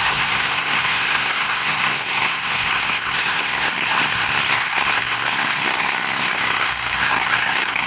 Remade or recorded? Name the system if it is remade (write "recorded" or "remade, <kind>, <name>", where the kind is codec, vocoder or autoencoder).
remade, codec, SNAC